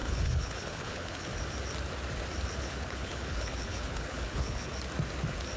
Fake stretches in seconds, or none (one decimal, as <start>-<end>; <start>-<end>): 0.0-1.3; 2.6-4.7

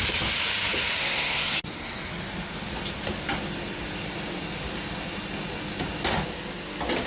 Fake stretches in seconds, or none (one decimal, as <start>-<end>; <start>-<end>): 1.0-2.1